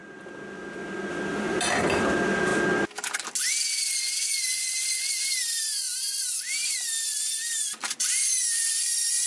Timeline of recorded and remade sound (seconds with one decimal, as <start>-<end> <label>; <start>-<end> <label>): 0.0-1.1 recorded; 1.1-2.5 remade; 2.5-3.5 recorded; 3.5-9.3 remade